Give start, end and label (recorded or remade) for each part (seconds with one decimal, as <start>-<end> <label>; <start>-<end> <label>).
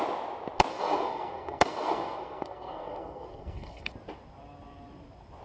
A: 0.0-0.7 recorded; 0.7-3.9 remade; 3.9-5.4 recorded